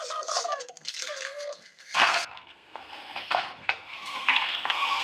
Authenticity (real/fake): fake